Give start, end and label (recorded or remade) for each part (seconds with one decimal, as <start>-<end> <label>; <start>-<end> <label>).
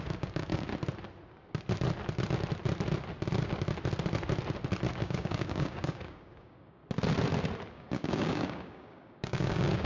0.0-0.7 remade; 0.7-4.9 recorded; 4.9-6.8 remade; 6.8-7.7 recorded; 7.7-9.9 remade